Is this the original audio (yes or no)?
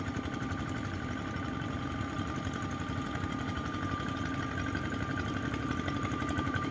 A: yes